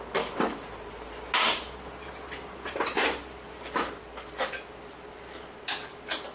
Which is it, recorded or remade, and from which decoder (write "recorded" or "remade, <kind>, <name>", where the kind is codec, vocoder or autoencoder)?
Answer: recorded